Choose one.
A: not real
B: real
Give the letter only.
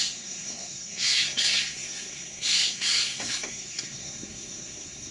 A